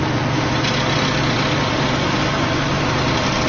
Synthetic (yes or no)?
no